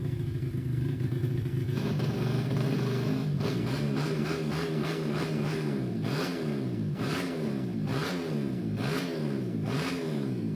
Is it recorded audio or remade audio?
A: remade